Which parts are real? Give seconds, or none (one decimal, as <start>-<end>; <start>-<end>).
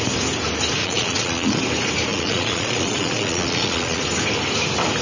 0.0-0.8; 1.6-2.1; 4.0-5.0